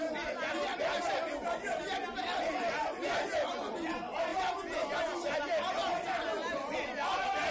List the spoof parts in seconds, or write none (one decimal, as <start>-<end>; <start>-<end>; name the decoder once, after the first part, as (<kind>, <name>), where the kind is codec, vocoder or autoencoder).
none